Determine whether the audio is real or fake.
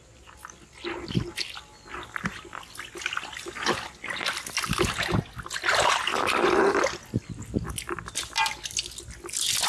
real